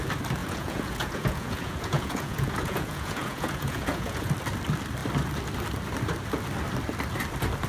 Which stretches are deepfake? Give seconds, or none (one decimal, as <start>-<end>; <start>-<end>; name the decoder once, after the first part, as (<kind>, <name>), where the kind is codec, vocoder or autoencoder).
0.4-4.3 (vocoder, Vocos)